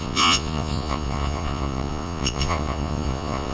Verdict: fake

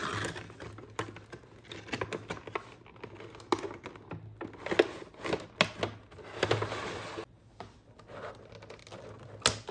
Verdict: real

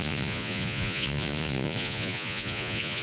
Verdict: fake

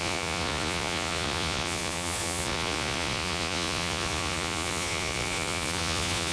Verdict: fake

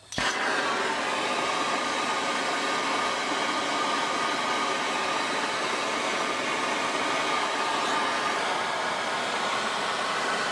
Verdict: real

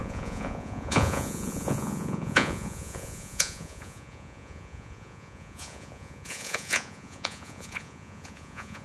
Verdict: fake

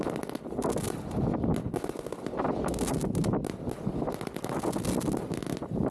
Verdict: real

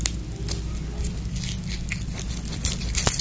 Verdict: real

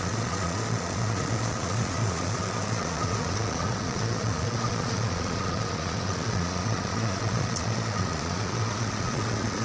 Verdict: fake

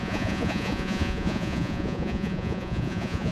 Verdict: fake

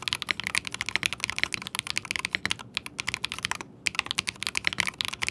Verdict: real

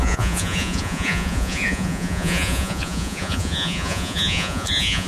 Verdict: fake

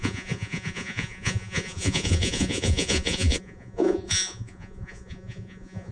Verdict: fake